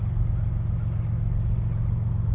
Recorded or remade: recorded